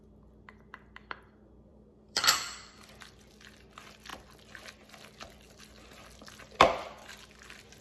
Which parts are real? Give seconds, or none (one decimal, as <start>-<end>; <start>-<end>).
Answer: 0.0-1.7; 3.3-7.8